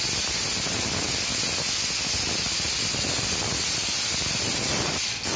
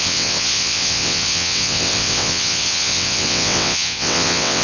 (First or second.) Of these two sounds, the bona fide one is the first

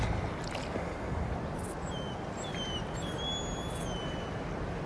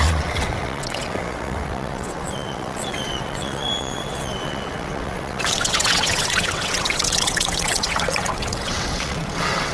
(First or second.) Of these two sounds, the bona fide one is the first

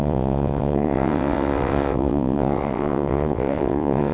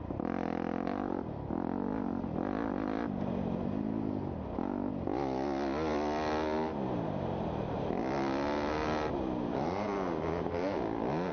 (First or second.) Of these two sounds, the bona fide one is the second